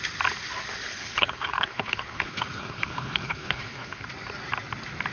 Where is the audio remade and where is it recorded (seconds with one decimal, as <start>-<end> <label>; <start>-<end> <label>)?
0.0-0.9 recorded; 0.9-4.0 remade; 4.0-5.1 recorded